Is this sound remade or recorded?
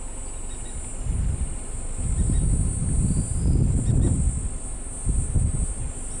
recorded